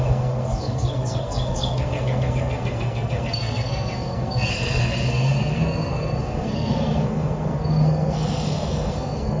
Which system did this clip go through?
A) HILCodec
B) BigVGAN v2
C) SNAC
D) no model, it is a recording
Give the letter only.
C